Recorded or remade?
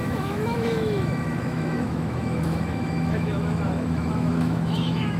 remade